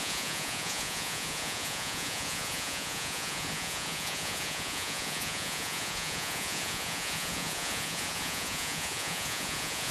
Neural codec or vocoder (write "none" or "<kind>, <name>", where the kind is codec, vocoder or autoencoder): vocoder, Vocos